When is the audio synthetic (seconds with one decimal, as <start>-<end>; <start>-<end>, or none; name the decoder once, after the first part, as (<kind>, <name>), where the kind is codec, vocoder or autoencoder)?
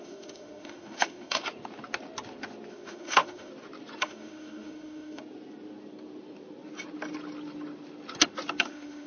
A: 0.0-1.4 (autoencoder, DAC-VAE); 2.7-3.5; 4.0-5.2; 8.6-9.1